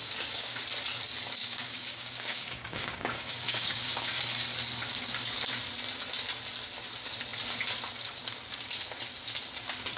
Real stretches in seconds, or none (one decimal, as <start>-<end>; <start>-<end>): 0.6-1.4; 4.2-10.0